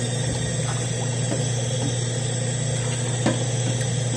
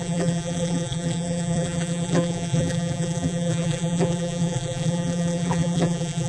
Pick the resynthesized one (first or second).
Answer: second